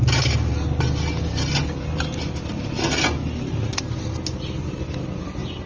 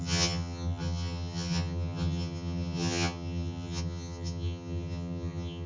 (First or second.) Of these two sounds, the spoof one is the second